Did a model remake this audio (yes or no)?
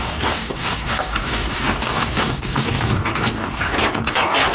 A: yes